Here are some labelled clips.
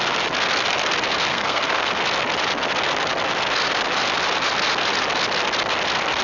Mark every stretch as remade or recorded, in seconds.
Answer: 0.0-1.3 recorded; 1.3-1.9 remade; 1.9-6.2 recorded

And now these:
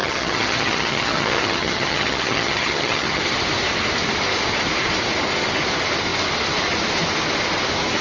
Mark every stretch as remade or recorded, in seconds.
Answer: 0.0-3.2 remade; 3.2-8.0 recorded

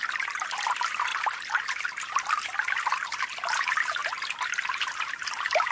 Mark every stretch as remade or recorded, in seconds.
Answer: 0.0-5.7 recorded

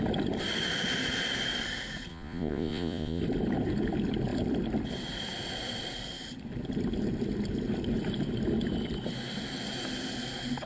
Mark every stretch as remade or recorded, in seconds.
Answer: 0.0-2.1 recorded; 2.1-3.2 remade; 3.2-10.7 recorded

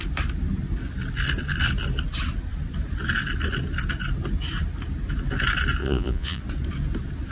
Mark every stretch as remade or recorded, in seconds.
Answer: 0.0-5.8 recorded; 5.8-6.4 remade; 6.4-7.3 recorded

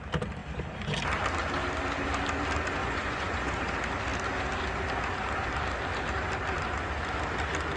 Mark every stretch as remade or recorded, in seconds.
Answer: 0.0-2.8 recorded; 2.8-3.5 remade; 3.5-7.8 recorded

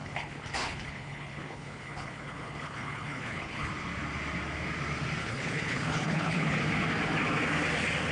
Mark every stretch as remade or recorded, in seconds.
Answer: 0.0-3.7 remade; 3.7-5.2 recorded; 5.2-6.6 remade; 6.6-8.1 recorded